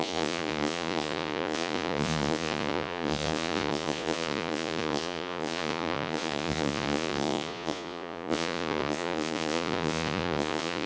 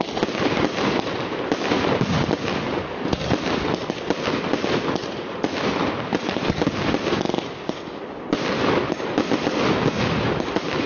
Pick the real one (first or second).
second